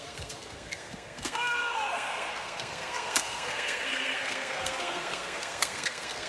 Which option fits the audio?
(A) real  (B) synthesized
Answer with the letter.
B